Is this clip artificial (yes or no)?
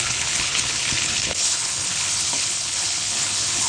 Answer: yes